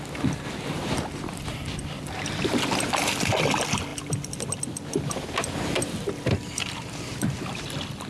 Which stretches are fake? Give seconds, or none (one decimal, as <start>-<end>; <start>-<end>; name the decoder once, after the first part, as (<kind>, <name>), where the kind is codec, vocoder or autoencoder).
none